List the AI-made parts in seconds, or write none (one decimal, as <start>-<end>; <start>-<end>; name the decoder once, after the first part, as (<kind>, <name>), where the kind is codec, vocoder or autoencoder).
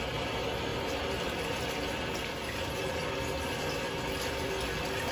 none